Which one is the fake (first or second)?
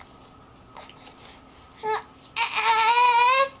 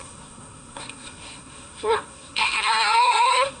second